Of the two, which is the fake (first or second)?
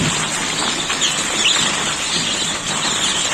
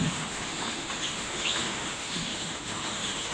second